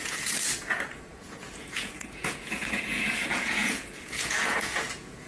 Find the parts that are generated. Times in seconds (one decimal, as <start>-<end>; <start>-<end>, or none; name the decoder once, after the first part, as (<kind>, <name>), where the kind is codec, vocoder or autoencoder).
0.0-5.3 (vocoder, Vocos)